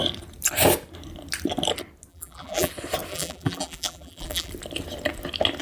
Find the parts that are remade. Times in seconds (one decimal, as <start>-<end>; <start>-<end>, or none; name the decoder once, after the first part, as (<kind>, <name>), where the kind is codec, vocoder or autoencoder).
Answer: 2.1-2.7 (vocoder, BigVGAN v2); 3.1-4.5